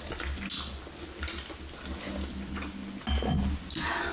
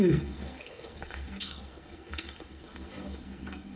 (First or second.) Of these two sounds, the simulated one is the second